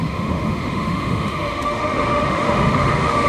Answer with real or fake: fake